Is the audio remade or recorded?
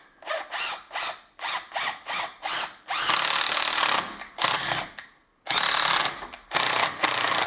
recorded